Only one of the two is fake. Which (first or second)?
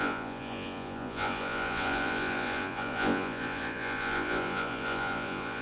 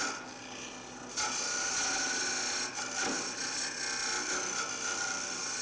first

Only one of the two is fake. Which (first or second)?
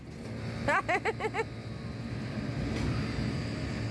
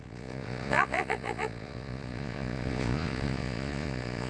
second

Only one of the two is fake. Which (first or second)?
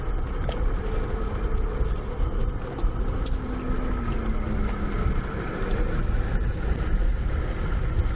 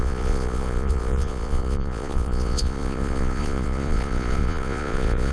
second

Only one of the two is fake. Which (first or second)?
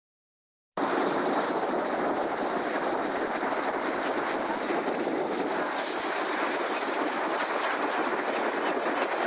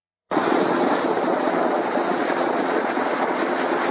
second